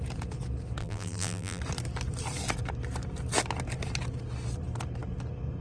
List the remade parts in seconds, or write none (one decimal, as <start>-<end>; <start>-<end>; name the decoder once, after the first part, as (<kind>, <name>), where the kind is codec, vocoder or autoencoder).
0.8-1.6 (vocoder, BigVGAN v2)